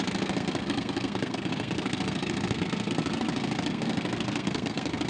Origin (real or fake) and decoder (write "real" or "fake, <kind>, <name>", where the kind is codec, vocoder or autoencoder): fake, codec, SNAC